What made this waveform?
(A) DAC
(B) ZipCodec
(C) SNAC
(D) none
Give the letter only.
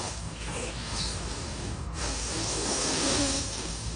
A